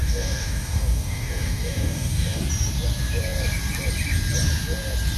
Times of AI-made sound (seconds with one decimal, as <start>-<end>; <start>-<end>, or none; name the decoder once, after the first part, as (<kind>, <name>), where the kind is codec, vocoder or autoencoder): 0.0-2.4 (codec, DAC)